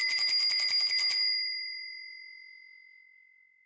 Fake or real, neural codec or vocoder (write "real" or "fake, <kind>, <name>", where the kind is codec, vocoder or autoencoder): real